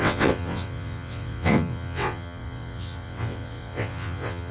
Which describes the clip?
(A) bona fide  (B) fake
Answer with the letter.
B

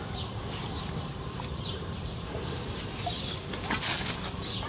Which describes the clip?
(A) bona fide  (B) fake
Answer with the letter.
B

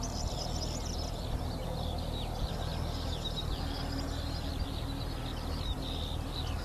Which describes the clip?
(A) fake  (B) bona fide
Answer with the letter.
B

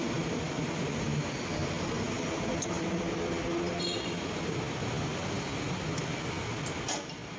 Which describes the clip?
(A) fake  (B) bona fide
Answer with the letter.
B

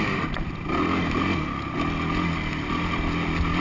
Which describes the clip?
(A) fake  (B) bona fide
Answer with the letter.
B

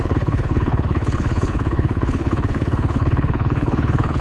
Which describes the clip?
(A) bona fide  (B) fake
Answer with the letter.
B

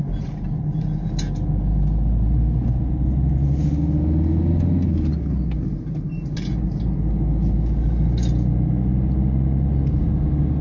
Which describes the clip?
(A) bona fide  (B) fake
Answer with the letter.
A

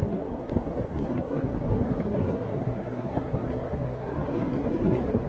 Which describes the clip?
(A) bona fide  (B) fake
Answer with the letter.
B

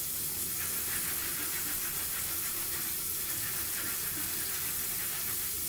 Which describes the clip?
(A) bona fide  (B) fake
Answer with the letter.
A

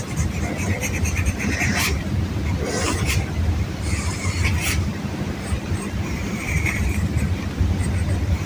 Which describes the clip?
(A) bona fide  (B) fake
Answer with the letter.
B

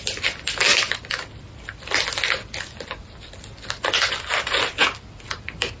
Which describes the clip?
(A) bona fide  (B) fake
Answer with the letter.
A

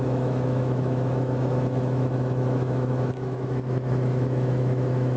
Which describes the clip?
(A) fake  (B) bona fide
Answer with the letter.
A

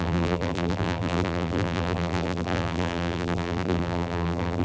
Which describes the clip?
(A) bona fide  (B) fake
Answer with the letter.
B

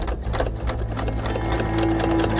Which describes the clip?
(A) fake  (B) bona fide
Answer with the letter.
B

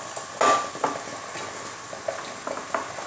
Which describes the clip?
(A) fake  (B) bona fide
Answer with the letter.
B